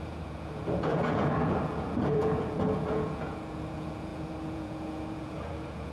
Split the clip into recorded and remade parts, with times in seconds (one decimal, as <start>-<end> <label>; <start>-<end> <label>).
0.0-5.9 remade